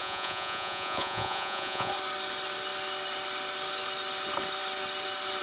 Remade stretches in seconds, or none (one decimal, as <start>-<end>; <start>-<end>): 0.0-1.9